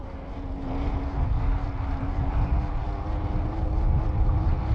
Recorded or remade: recorded